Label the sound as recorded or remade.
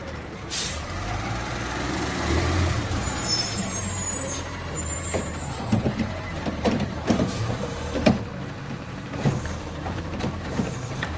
remade